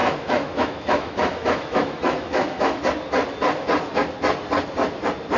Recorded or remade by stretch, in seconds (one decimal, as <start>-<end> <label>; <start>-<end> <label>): 0.0-2.8 remade; 2.8-5.4 recorded